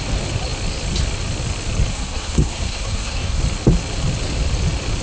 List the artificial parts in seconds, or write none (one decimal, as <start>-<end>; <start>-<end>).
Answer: 1.9-3.4